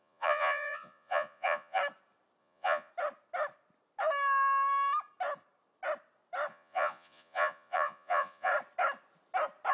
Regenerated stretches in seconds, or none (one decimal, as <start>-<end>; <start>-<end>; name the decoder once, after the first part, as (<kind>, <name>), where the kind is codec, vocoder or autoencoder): 0.0-1.8 (vocoder, Vocos); 2.4-2.9; 6.5-8.5